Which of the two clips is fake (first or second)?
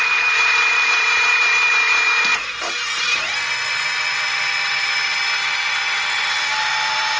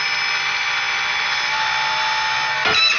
first